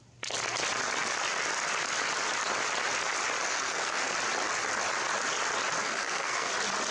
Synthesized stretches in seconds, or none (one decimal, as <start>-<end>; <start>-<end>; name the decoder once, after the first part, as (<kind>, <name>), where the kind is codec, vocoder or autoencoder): 3.5-4.1 (codec, SNAC); 5.8-6.5